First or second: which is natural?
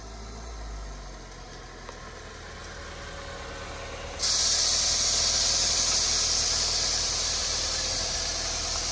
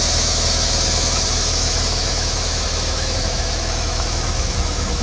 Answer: first